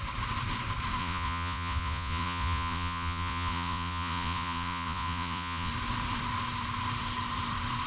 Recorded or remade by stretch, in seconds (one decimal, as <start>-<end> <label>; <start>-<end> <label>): 0.0-1.0 recorded; 1.0-5.7 remade; 5.7-7.9 recorded